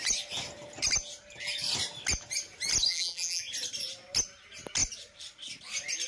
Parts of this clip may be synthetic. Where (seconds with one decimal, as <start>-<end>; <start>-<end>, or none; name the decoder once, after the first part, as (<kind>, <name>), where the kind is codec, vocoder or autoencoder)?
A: 2.9-3.4 (vocoder, BigVGAN v2)